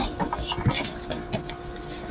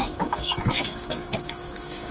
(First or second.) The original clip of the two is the first